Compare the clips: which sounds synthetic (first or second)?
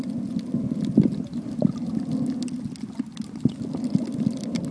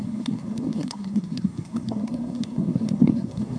second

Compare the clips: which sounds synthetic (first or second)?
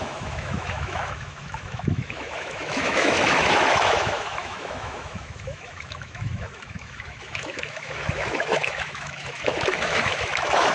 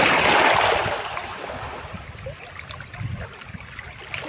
first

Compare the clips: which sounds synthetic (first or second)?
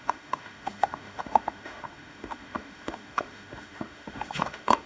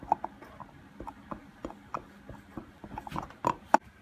first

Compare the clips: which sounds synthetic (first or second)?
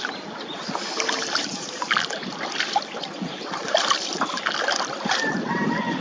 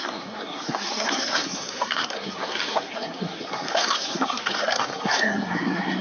second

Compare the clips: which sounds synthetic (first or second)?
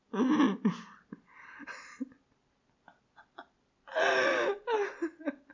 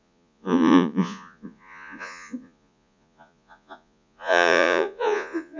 second